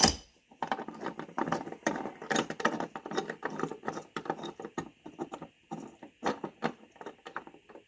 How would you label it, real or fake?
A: fake